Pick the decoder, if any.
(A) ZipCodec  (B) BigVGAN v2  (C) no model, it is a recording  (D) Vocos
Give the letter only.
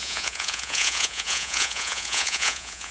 D